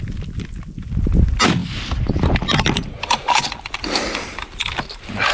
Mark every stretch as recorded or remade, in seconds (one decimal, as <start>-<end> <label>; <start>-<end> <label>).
0.0-5.3 recorded